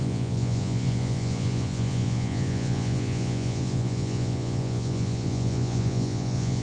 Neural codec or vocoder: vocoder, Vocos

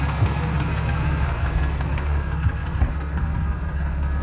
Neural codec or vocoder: codec, SNAC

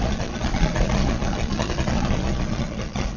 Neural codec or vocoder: vocoder, Vocos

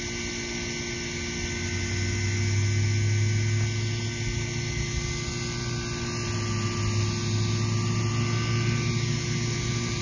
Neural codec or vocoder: none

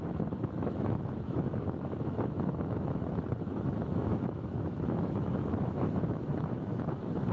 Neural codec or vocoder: autoencoder, DAC-VAE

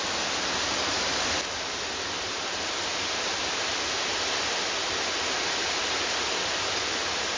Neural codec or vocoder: none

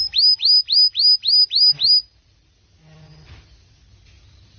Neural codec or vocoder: none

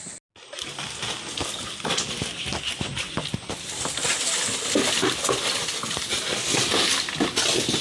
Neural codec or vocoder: none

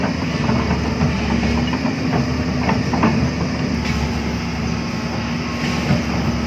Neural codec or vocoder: none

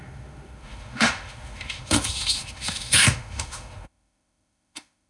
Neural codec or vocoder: autoencoder, DAC-VAE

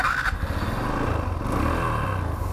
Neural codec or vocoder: none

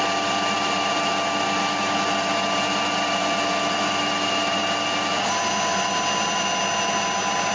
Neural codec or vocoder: none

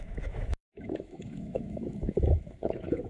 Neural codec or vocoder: autoencoder, DAC-VAE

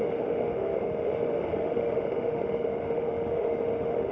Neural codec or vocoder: autoencoder, DAC-VAE